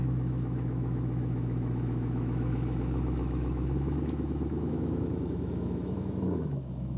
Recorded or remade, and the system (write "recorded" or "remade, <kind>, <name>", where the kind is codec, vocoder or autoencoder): remade, autoencoder, DAC-VAE